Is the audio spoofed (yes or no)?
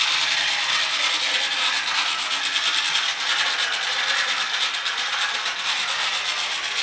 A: no